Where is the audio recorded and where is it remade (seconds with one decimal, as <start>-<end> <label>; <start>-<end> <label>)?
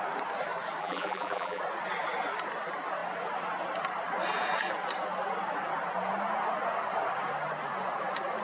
0.0-0.8 recorded; 0.8-1.6 remade; 1.6-8.4 recorded